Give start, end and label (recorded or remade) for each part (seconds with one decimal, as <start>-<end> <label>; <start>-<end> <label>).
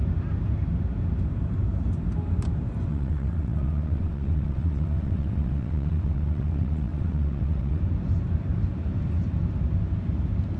0.0-2.9 recorded; 2.9-7.8 remade; 7.8-10.6 recorded